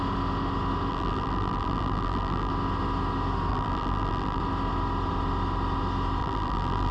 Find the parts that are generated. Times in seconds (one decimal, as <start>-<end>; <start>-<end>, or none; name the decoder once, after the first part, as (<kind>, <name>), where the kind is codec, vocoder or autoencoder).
0.9-2.5 (vocoder, BigVGAN v2); 3.5-4.4; 6.2-6.9